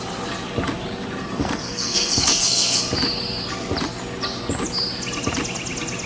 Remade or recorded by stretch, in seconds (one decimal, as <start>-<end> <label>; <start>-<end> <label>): 0.0-1.3 recorded; 1.3-2.8 remade; 2.8-6.1 recorded